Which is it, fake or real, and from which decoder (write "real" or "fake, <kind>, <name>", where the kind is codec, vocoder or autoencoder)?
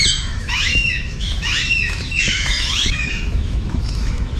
fake, autoencoder, DAC-VAE